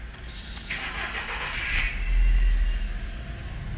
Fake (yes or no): no